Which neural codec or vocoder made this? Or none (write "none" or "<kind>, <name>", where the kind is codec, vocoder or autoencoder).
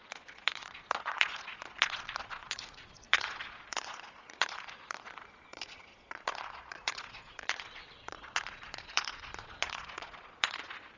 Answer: vocoder, Vocos